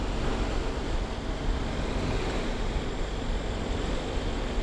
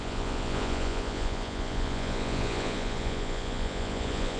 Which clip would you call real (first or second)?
first